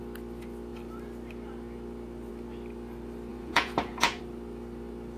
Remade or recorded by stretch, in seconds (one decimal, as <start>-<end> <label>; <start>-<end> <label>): 0.0-3.3 recorded; 3.3-4.2 remade; 4.2-5.2 recorded